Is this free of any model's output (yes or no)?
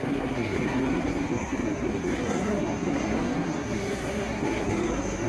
no